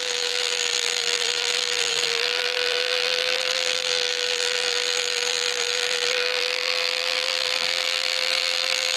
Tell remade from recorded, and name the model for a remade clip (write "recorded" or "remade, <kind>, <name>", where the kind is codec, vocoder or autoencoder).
remade, vocoder, BigVGAN v2